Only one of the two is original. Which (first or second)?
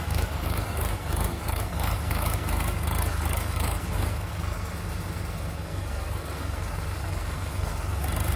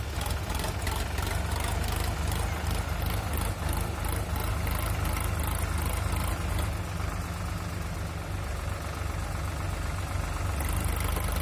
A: second